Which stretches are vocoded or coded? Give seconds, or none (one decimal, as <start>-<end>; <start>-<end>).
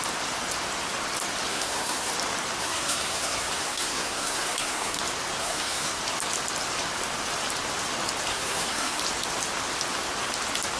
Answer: 1.5-2.1; 2.6-5.0; 5.4-6.0; 8.3-9.0